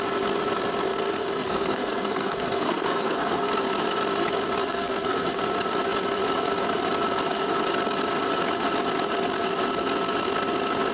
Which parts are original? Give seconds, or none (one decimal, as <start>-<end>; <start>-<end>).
0.0-0.9; 3.5-4.6; 5.4-10.9